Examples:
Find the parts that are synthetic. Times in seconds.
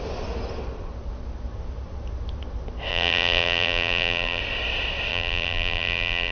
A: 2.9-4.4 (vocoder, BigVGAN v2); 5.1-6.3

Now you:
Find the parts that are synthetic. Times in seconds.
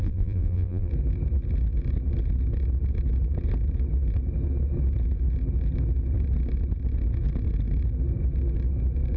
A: 0.0-0.9 (vocoder, BigVGAN v2)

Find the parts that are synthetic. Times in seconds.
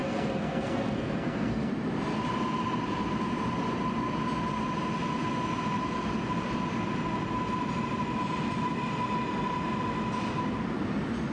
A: 0.0-1.7 (codec, SNAC)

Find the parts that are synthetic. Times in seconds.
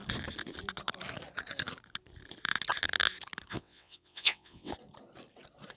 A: 3.5-4.7 (vocoder, WaveNeXt)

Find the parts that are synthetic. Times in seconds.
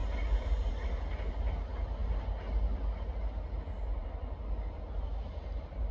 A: none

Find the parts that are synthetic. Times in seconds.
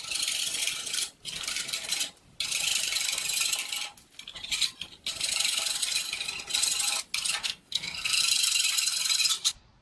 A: 7.4-8.2 (codec, SNAC)